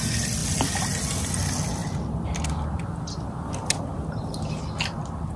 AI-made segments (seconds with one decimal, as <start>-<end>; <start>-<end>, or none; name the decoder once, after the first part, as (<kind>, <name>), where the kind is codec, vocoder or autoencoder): none

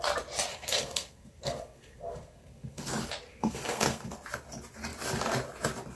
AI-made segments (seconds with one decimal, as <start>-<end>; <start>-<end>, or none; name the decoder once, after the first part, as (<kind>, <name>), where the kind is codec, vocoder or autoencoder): 0.5-2.9 (codec, SNAC); 3.3-4.1

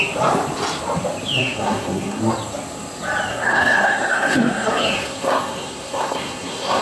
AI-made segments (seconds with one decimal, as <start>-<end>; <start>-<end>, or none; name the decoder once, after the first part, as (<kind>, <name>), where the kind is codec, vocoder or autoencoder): 1.4-2.2 (codec, SNAC); 3.3-6.8

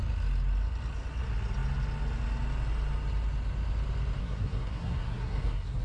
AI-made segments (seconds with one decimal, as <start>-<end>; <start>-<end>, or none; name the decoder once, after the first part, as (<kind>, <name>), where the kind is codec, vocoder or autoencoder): 4.2-5.8 (codec, SNAC)

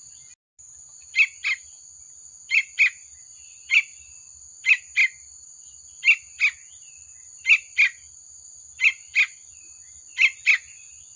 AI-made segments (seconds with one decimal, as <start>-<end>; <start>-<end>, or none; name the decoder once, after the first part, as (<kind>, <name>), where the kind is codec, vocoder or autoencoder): none

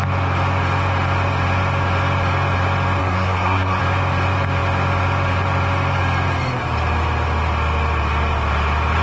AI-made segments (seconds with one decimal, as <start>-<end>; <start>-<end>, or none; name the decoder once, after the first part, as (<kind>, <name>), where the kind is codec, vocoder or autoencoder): 3.0-3.8 (codec, SNAC)